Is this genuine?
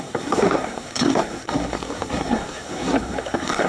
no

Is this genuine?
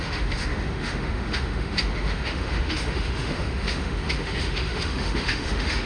no